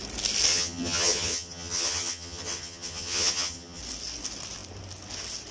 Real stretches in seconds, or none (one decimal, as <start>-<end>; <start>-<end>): 0.0-0.5; 3.8-5.5